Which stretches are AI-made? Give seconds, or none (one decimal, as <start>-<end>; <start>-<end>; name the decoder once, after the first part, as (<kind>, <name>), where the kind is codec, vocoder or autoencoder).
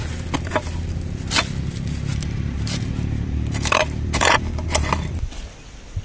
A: 2.1-5.4 (vocoder, BigVGAN v2)